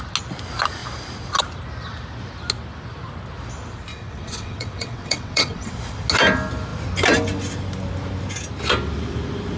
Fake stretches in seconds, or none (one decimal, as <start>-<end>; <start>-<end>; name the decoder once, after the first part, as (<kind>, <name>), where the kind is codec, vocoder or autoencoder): 3.9-5.7 (vocoder, WaveNeXt)